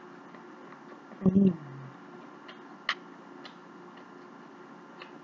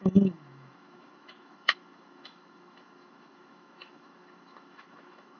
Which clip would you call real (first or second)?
first